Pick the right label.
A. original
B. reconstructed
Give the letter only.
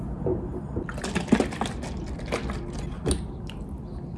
A